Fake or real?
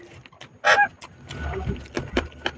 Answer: real